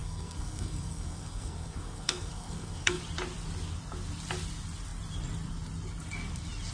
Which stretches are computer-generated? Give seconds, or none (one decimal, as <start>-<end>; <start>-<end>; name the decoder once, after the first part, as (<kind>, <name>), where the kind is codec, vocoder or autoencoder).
0.0-3.0 (codec, SNAC)

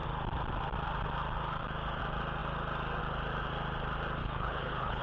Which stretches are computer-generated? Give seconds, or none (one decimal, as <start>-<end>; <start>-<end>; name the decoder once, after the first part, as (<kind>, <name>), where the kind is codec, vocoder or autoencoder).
4.2-5.0 (codec, HILCodec)

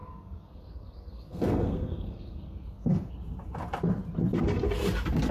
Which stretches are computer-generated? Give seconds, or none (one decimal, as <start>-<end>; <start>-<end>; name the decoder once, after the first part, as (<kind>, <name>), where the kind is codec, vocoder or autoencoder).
0.0-3.1 (codec, SNAC)

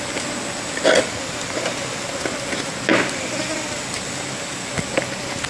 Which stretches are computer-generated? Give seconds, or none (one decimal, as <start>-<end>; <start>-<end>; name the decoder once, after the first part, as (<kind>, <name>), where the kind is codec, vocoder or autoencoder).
none

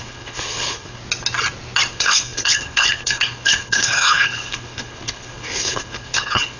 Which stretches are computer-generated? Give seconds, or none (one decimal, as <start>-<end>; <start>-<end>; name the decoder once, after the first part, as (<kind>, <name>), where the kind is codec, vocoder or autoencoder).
0.0-1.0 (codec, HILCodec); 1.9-6.6

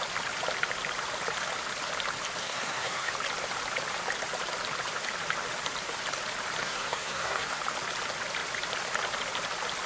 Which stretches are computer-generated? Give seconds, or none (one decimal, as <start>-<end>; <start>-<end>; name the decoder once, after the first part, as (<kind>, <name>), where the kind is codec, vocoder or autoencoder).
2.4-3.1 (codec, SNAC); 6.6-7.6

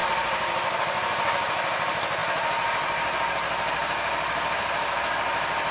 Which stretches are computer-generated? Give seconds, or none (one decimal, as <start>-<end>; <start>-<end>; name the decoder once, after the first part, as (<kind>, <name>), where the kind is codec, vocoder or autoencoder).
none